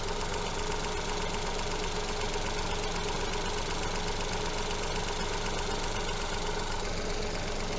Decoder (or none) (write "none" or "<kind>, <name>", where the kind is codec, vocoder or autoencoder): none